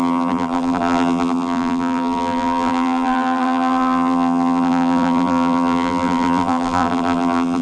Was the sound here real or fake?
fake